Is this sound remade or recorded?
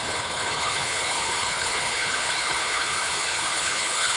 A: remade